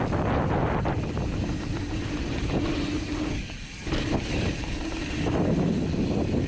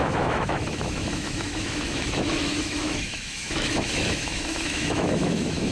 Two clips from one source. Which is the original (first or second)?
first